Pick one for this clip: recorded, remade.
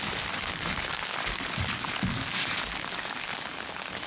remade